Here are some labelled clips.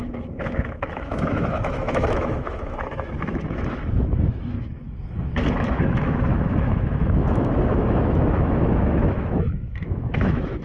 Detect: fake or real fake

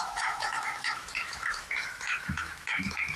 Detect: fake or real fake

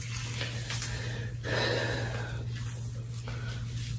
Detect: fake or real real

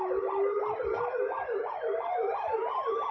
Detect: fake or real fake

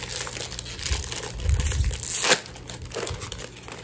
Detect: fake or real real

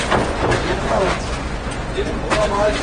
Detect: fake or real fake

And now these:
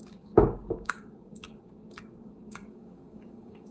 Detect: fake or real fake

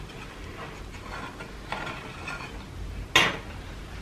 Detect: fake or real real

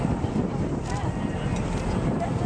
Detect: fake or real real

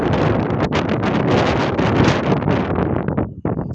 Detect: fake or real real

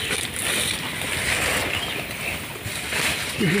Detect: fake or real real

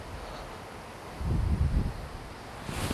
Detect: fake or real real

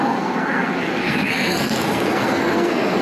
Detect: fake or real fake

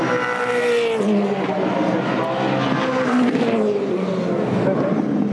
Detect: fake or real real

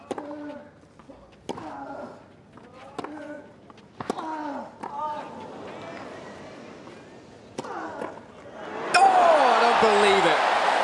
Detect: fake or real real